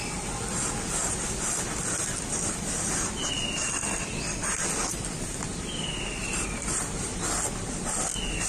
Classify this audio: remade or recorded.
recorded